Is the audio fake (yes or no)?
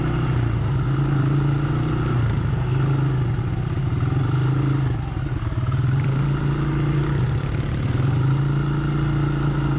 no